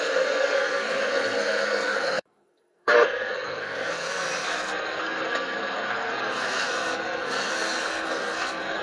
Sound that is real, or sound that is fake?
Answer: fake